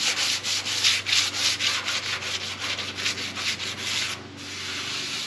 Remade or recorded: recorded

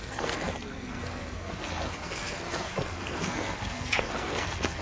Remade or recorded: remade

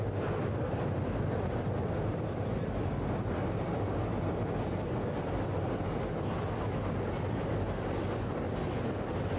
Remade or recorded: recorded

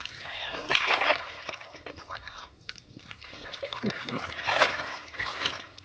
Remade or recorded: remade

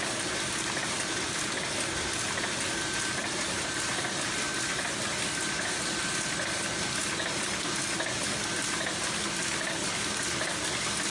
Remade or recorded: recorded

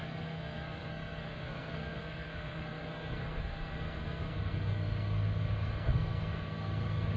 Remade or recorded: remade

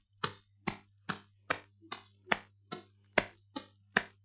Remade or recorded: recorded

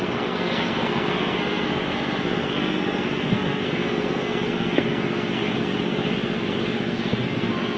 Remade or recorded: remade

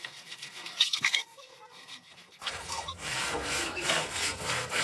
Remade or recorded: remade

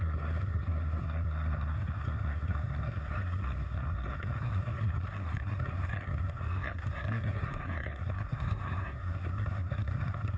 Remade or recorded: remade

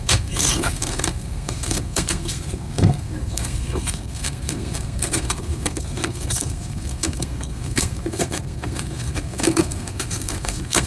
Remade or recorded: remade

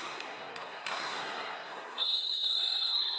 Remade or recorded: remade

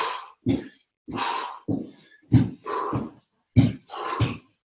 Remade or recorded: recorded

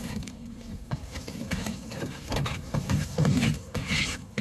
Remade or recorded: remade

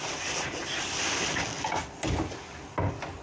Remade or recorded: recorded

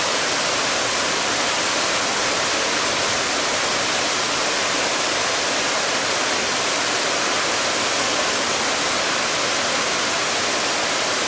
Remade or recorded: recorded